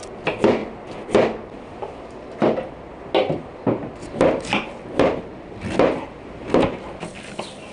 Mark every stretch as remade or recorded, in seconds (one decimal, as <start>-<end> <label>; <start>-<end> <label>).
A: 0.0-7.7 recorded